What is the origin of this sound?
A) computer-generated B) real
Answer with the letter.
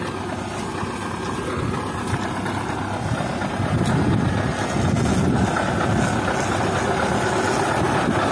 B